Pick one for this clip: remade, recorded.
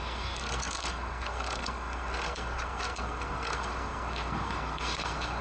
remade